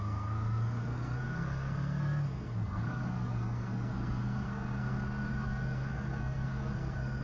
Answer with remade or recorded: remade